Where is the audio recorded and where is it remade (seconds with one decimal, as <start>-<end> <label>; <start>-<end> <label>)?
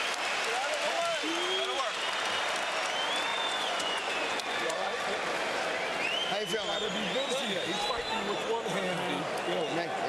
0.0-3.3 recorded; 3.3-5.0 remade; 5.0-10.1 recorded